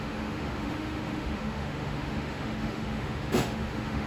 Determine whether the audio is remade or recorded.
remade